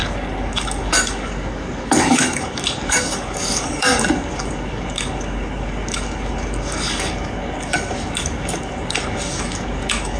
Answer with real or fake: fake